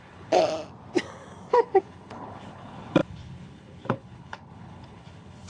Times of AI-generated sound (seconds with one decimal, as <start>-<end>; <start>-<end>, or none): 0.0-0.4; 1.5-5.5